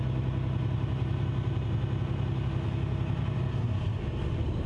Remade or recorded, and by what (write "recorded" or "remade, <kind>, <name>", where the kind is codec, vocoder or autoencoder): recorded